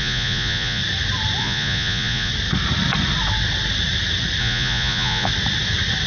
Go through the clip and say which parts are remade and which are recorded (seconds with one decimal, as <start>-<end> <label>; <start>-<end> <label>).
0.0-0.8 remade; 0.8-1.4 recorded; 1.4-2.3 remade; 2.3-4.4 recorded; 4.4-5.3 remade; 5.3-6.1 recorded